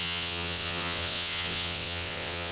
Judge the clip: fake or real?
fake